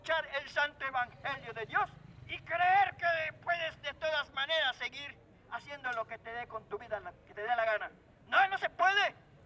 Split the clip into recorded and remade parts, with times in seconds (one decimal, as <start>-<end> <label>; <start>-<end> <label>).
0.0-7.2 recorded; 7.2-8.1 remade; 8.1-8.7 recorded; 8.7-9.5 remade